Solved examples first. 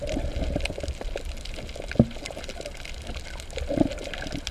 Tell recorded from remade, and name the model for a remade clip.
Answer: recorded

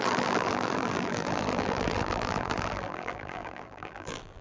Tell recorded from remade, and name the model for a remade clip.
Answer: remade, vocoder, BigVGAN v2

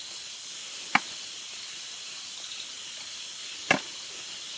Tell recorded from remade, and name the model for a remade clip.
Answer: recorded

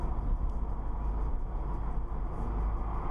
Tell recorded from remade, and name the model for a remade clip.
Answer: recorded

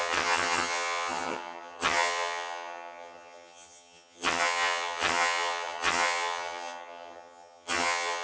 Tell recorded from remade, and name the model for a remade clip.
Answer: remade, vocoder, HiFi-GAN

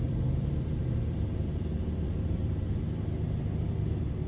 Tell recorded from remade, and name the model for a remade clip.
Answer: remade, vocoder, BigVGAN v2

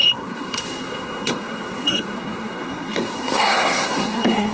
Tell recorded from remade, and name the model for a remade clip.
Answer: remade, codec, SNAC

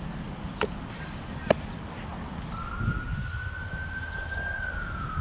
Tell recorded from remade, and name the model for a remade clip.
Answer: recorded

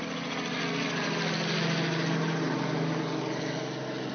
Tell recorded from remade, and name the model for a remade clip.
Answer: recorded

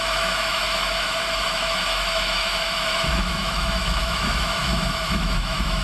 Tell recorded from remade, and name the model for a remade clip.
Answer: remade, autoencoder, DAC-VAE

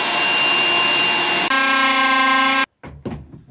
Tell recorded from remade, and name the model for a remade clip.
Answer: recorded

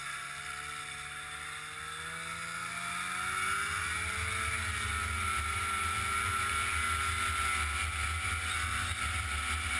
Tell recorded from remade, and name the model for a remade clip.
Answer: recorded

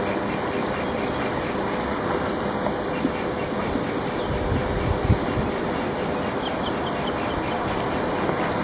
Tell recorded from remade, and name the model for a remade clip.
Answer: recorded